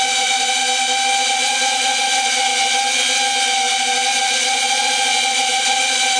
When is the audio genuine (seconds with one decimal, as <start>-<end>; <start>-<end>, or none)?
0.6-1.3; 2.5-4.2

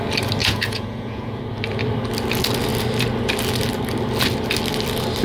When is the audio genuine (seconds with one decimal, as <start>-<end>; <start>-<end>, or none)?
0.0-0.4; 1.4-5.2

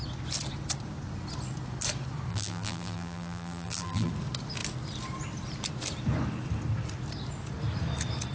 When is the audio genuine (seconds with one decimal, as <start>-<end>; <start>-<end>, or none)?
0.0-2.3; 4.1-8.3

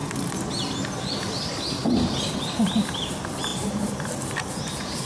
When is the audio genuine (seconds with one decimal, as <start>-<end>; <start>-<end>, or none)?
0.0-3.5; 4.1-5.1

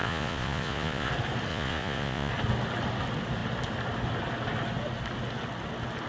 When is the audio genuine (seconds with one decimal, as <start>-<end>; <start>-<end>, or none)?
1.1-1.5; 2.3-6.1

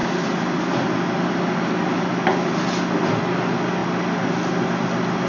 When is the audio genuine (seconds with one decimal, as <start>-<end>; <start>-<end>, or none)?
0.0-5.3